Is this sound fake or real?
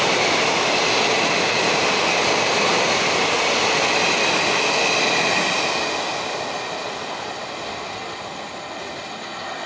real